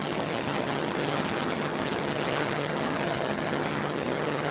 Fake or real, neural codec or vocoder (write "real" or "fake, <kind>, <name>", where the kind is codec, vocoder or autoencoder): fake, vocoder, HiFi-GAN